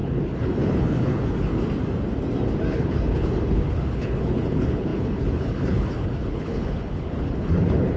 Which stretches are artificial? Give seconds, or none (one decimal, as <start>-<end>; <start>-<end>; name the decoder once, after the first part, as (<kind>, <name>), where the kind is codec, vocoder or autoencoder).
0.0-1.5 (codec, HILCodec); 2.7-8.0